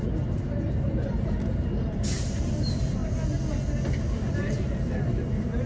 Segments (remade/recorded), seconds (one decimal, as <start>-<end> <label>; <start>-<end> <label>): 0.0-3.0 remade; 3.0-4.3 recorded; 4.3-5.7 remade